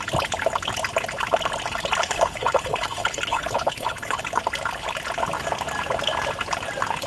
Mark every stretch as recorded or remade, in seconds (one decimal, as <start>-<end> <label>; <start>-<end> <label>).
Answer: 0.0-2.0 recorded; 2.0-4.4 remade; 4.4-7.1 recorded